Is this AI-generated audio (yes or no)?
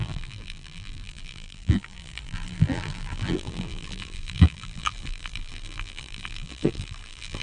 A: yes